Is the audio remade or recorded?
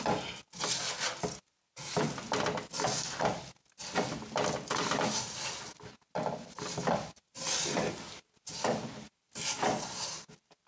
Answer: recorded